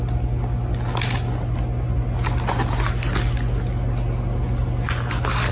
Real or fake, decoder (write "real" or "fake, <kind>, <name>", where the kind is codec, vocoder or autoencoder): real